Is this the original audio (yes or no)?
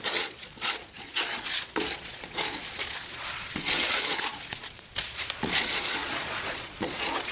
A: no